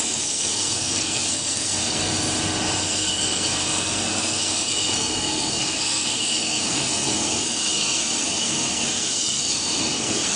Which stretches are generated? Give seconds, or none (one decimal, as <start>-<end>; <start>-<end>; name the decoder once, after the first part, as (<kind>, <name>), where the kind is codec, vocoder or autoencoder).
0.0-2.1 (codec, SNAC); 2.8-10.4